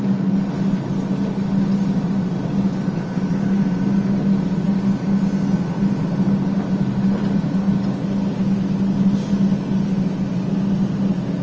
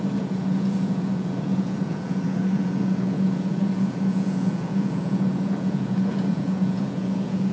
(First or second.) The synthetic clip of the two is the second